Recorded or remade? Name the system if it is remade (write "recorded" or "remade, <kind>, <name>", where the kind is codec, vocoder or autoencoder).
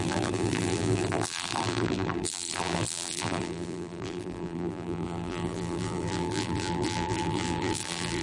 remade, vocoder, BigVGAN v2